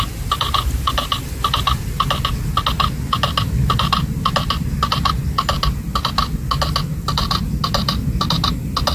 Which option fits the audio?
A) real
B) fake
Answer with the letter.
A